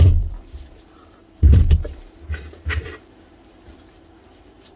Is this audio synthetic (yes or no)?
yes